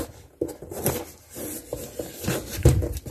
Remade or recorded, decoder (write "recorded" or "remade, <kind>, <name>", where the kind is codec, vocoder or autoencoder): recorded